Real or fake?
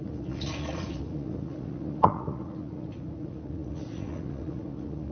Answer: fake